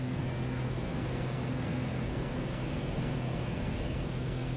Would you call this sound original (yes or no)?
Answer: no